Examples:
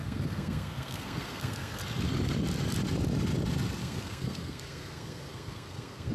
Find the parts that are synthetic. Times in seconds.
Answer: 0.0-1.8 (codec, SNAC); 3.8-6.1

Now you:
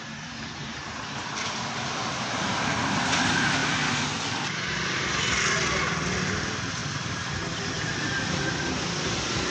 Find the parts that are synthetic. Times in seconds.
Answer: none

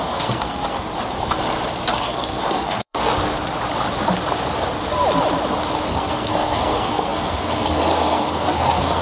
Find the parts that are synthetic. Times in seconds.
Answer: 0.0-0.9 (codec, SNAC); 2.0-3.1; 5.9-9.0

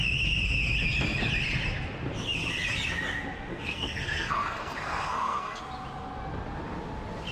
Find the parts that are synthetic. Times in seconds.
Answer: 3.5-5.6 (codec, SNAC)

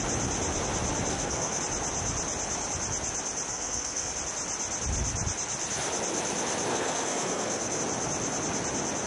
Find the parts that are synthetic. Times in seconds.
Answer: 1.1-1.6 (codec, SNAC); 3.5-4.1; 6.7-7.8

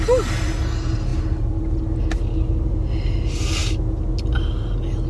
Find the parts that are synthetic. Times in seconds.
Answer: none

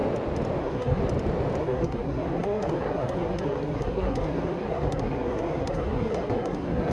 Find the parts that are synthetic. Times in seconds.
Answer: 0.6-1.0 (codec, SNAC); 1.6-6.9

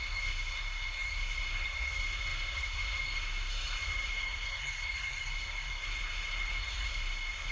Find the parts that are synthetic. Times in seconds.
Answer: 0.0-7.5 (codec, SNAC)